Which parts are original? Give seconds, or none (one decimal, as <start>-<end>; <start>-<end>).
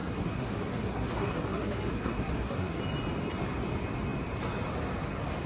2.8-5.5